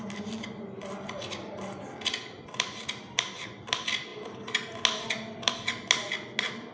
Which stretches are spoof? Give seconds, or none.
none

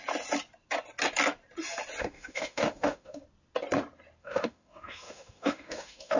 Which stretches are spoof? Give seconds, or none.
2.0-3.2 (autoencoder, DAC-VAE); 4.2-6.2